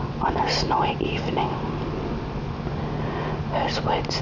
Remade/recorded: recorded